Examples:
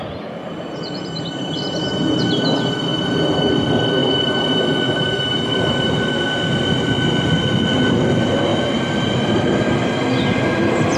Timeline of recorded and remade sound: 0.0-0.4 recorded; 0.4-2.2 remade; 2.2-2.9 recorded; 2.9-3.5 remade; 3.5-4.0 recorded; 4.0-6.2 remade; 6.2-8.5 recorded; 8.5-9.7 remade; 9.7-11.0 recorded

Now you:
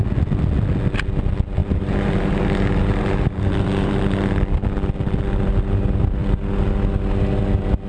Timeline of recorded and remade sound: 0.0-1.6 recorded; 1.6-4.0 remade; 4.0-7.9 recorded

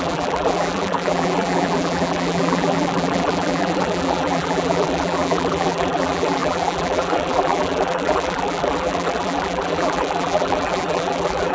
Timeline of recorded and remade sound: 0.0-11.5 remade

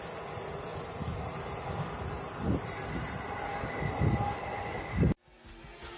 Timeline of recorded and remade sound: 0.0-0.7 recorded; 0.7-3.9 remade; 3.9-6.0 recorded

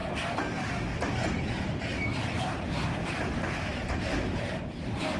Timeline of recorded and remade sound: 0.0-5.2 remade

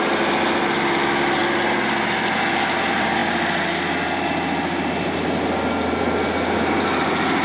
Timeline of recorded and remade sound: 0.0-7.4 recorded

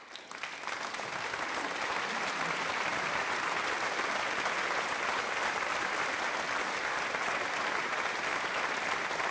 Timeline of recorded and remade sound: 0.0-9.3 recorded

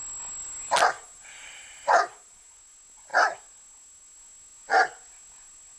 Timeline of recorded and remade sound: 0.0-0.4 recorded; 0.4-2.5 remade; 2.5-5.8 recorded